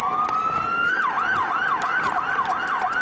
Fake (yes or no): no